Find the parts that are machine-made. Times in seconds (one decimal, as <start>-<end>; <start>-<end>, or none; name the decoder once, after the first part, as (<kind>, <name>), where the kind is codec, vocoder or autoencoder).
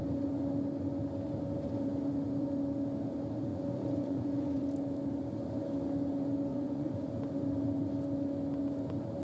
3.5-4.6 (vocoder, Vocos); 6.5-7.1